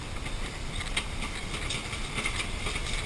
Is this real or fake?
real